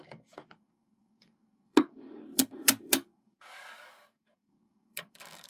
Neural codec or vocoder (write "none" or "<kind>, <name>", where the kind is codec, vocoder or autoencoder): codec, DAC